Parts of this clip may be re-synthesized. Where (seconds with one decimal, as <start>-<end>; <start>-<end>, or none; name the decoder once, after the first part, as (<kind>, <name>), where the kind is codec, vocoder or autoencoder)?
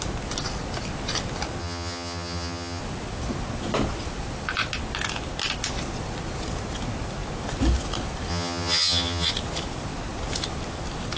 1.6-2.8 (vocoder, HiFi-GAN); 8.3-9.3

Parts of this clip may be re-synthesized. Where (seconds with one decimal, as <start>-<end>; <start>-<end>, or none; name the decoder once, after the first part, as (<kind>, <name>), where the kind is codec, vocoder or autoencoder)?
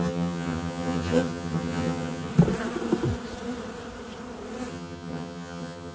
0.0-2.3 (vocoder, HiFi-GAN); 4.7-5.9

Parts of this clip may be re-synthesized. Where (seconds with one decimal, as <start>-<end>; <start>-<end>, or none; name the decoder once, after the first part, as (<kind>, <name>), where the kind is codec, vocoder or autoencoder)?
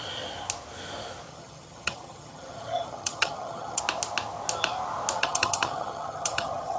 1.3-3.8 (vocoder, HiFi-GAN); 5.2-6.8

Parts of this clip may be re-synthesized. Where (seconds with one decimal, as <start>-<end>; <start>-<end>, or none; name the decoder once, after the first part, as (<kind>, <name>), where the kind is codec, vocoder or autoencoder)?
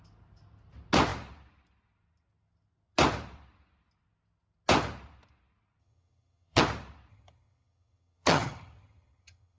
5.8-6.6 (vocoder, HiFi-GAN); 7.1-9.6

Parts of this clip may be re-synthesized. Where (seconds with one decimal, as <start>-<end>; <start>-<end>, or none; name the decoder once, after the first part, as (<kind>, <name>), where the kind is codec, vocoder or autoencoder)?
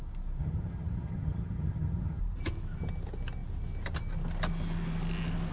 0.4-2.2 (vocoder, HiFi-GAN)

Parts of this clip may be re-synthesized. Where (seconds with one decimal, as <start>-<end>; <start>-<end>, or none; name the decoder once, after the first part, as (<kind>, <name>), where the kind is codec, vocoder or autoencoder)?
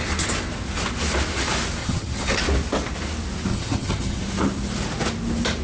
1.8-2.4 (vocoder, HiFi-GAN); 3.5-4.2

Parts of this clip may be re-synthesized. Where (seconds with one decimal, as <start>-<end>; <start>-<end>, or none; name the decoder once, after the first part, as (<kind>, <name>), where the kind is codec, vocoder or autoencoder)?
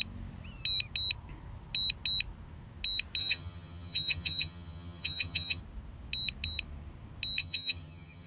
3.2-5.6 (vocoder, HiFi-GAN); 7.4-8.3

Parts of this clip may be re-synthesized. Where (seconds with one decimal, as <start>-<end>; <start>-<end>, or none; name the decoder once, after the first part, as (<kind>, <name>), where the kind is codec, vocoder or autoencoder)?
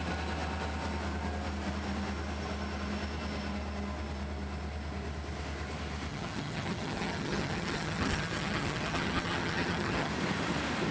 6.1-10.1 (vocoder, HiFi-GAN)